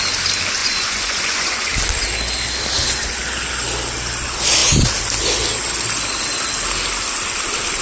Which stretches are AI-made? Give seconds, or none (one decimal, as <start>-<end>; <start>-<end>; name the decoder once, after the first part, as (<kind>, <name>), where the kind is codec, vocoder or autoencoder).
0.6-1.7 (vocoder, Vocos)